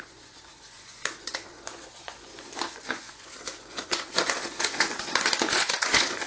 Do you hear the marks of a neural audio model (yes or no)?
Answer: yes